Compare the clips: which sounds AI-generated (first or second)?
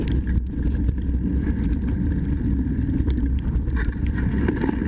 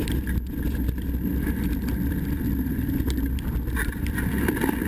first